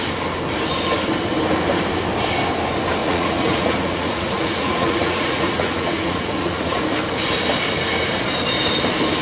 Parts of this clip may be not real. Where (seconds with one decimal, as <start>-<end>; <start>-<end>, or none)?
3.0-6.8

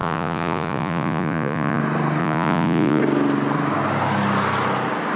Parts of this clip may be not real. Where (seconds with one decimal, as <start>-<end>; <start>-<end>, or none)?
0.0-1.8; 2.2-3.0